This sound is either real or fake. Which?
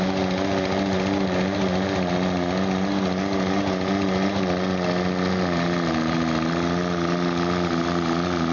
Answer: real